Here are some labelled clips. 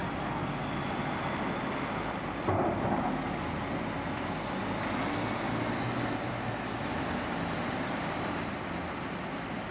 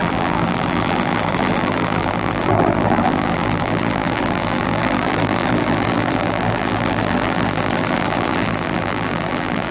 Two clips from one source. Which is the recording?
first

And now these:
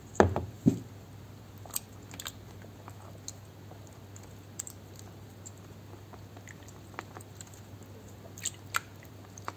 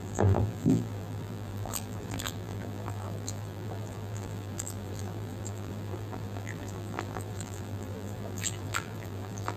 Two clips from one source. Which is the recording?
first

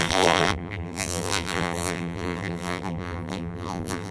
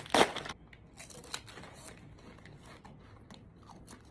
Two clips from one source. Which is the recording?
second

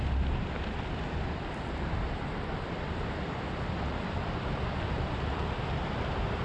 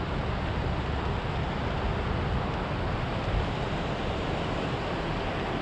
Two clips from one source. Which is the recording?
second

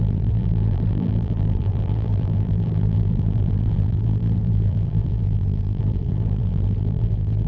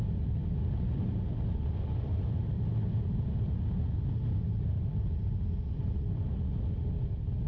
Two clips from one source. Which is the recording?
second